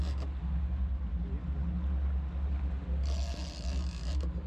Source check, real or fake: real